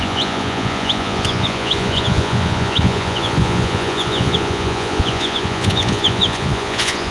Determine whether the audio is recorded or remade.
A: remade